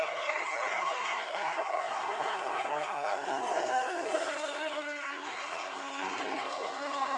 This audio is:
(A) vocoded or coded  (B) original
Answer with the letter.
A